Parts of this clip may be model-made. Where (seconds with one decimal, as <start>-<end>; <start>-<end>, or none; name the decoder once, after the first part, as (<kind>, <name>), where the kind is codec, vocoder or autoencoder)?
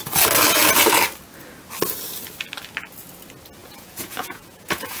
3.6-5.0 (vocoder, Vocos)